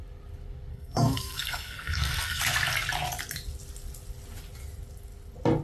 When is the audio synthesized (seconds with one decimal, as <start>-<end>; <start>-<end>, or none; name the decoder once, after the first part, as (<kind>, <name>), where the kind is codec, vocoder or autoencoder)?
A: 0.7-2.4 (codec, SNAC)